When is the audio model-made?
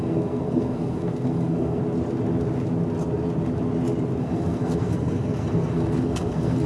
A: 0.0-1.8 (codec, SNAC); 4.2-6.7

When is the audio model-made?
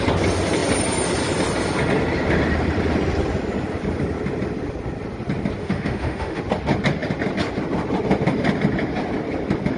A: 5.6-6.4 (autoencoder, DAC-VAE)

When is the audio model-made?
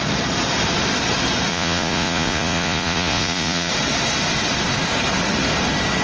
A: 1.5-3.7 (vocoder, Vocos)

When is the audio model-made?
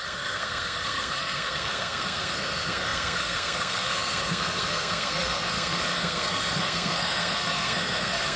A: 0.0-8.4 (codec, SNAC)